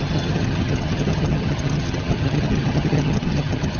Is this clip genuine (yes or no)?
no